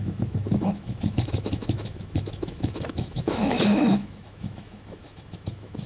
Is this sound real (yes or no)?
no